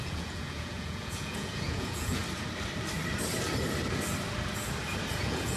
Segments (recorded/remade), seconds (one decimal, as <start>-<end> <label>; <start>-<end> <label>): 0.0-2.2 remade; 2.2-5.1 recorded; 5.1-5.6 remade

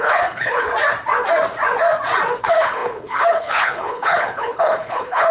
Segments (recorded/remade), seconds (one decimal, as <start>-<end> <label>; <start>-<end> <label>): 0.0-0.7 remade; 0.7-2.4 recorded; 2.4-5.3 remade

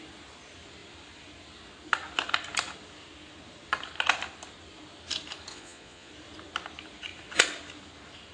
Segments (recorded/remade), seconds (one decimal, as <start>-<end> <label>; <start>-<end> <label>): 0.0-5.5 recorded; 5.5-6.1 remade; 6.1-8.3 recorded

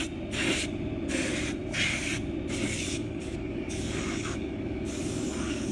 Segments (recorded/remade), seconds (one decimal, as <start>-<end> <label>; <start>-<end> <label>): 0.0-2.6 recorded; 2.6-5.7 remade

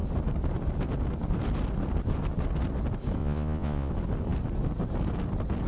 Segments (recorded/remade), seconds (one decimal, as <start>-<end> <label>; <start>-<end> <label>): 0.0-3.2 recorded; 3.2-3.9 remade; 3.9-5.7 recorded

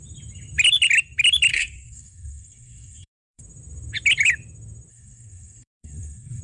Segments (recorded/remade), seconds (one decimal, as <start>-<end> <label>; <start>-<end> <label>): 0.0-1.5 recorded; 1.5-3.4 remade; 3.4-4.9 recorded; 4.9-6.4 remade